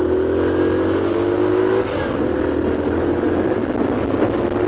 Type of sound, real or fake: real